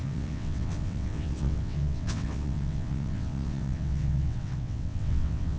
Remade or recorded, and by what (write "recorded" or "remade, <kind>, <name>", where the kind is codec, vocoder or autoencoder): remade, vocoder, WaveNeXt